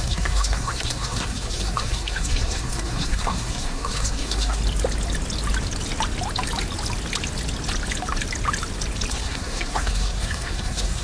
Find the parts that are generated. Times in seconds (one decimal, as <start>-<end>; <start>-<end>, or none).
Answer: 0.0-4.6; 9.1-11.0

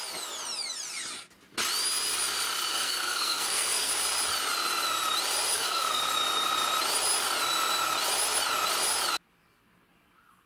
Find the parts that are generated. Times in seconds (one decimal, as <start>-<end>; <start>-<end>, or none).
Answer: 2.7-3.9; 5.5-6.0

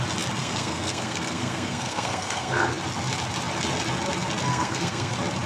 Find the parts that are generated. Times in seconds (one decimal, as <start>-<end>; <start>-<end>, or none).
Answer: 0.4-2.7; 4.5-5.1

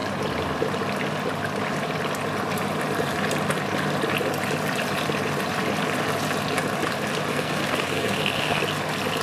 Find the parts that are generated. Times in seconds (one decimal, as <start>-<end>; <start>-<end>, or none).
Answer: 7.3-8.6

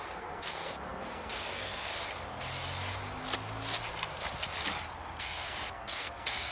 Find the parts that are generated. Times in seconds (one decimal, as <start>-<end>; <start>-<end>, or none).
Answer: 0.0-1.9; 5.2-6.5

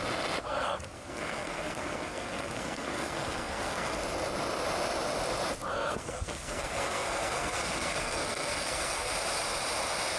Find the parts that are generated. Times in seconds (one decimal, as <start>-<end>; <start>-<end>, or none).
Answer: 0.4-4.0; 5.7-9.1

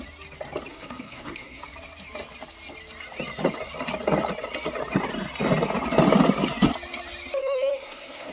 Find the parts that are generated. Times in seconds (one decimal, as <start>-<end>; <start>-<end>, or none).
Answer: 0.7-1.6; 7.4-8.3

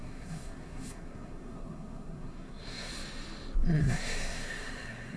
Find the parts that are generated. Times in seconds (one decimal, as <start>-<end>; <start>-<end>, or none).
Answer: 0.0-2.9; 3.8-5.2